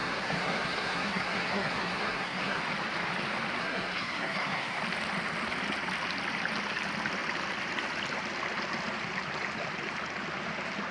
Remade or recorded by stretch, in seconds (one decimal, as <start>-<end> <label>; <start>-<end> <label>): 0.0-2.6 remade; 2.6-3.6 recorded; 3.6-4.8 remade; 4.8-10.9 recorded